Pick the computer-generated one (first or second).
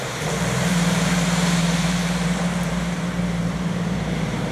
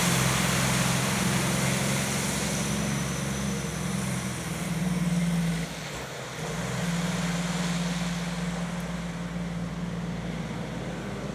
first